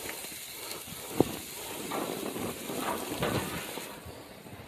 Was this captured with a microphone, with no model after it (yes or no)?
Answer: yes